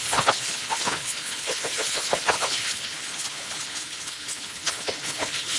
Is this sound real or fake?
fake